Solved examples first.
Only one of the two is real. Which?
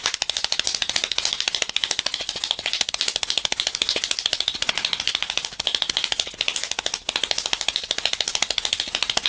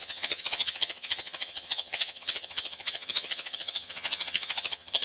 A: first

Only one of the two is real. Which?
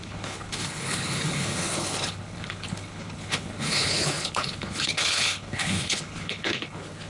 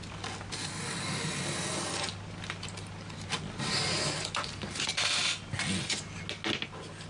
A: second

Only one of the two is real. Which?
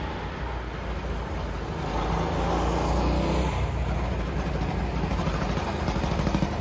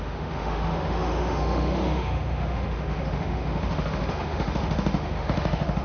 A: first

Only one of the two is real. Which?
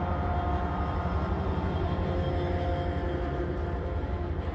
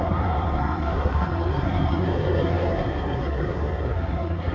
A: first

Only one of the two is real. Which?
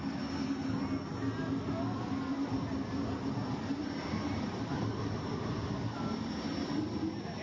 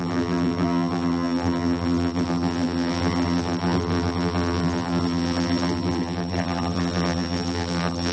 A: first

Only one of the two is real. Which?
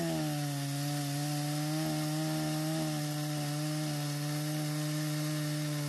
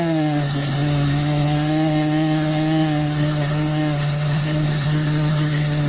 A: first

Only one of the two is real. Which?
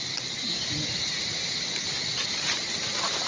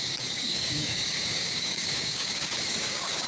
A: first